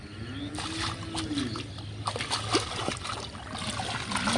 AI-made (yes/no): no